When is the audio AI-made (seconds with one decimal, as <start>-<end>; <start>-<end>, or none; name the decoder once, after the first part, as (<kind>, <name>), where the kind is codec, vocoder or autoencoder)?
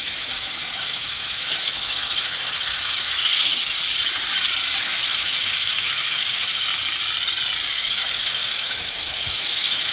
0.0-3.8 (autoencoder, DAC-VAE); 4.8-6.7; 7.7-9.9